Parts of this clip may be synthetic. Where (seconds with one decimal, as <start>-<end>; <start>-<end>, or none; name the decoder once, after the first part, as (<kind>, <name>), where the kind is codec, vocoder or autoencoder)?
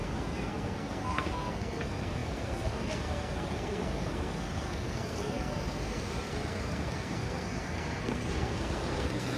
0.0-9.4 (codec, SNAC)